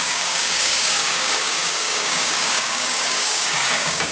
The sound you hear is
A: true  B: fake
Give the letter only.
B